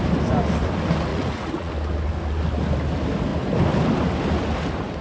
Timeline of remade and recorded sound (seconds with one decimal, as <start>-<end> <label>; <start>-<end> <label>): 0.0-1.1 recorded; 1.1-1.7 remade; 1.7-5.0 recorded